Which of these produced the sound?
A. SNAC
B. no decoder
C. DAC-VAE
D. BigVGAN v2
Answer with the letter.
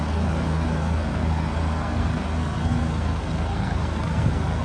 A